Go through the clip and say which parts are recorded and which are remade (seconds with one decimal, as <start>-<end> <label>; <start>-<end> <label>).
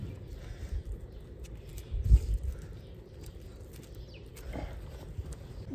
0.0-5.7 recorded